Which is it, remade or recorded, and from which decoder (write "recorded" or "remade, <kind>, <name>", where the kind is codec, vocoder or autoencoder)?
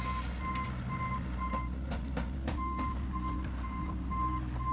recorded